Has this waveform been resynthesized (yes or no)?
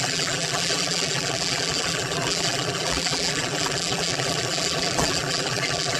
yes